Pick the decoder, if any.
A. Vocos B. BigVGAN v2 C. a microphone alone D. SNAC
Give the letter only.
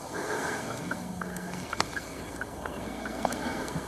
D